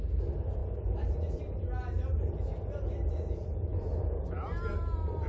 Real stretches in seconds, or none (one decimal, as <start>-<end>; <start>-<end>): none